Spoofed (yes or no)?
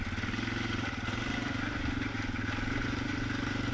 no